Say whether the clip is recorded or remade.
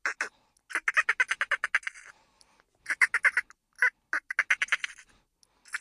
recorded